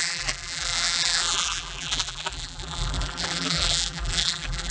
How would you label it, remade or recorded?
remade